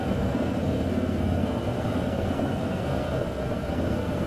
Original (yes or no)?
no